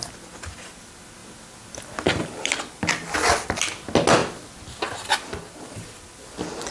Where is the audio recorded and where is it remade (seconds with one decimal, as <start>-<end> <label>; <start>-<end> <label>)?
0.0-6.7 recorded